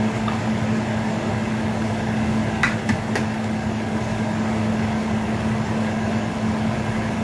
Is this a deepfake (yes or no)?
yes